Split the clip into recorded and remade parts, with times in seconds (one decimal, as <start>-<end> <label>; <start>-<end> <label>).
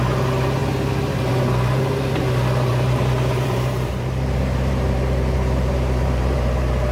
0.0-0.6 recorded; 0.6-1.3 remade; 1.3-2.7 recorded; 2.7-6.9 remade